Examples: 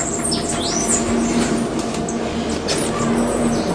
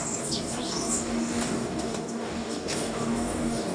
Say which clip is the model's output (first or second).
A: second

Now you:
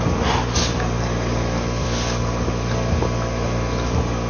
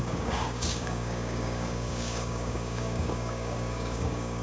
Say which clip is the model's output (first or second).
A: second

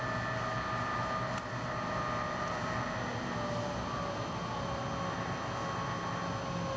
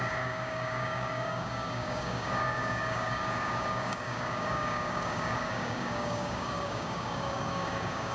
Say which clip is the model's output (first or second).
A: second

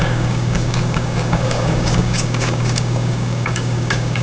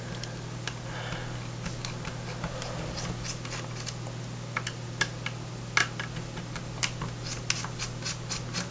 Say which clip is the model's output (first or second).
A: first